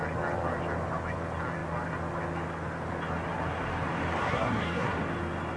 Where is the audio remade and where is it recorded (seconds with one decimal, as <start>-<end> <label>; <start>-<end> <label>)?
0.0-4.2 recorded; 4.2-5.0 remade; 5.0-5.6 recorded